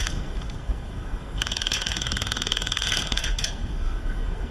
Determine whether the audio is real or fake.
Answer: fake